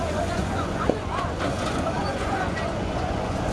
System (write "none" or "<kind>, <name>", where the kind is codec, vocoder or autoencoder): vocoder, Vocos